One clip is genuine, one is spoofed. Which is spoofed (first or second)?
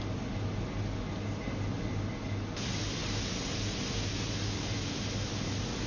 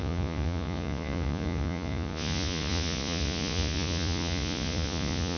second